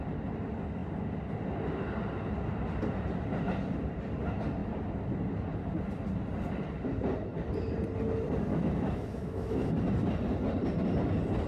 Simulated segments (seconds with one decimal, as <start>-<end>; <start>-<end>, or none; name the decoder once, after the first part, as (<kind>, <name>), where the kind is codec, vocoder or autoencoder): 8.5-9.6 (autoencoder, DAC-VAE)